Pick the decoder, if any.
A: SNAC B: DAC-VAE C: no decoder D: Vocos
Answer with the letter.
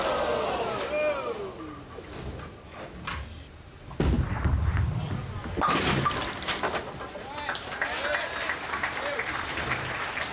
C